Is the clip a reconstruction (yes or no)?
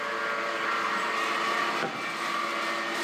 no